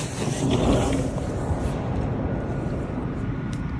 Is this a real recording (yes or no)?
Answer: yes